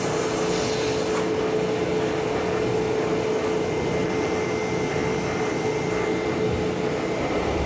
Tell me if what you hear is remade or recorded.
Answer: recorded